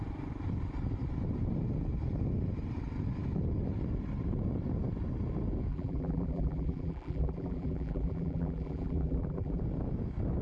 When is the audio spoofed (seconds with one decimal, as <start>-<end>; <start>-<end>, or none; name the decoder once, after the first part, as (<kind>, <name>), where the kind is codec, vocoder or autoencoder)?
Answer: 5.7-9.6 (vocoder, BigVGAN v2)